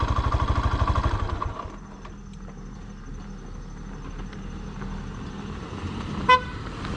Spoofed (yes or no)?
no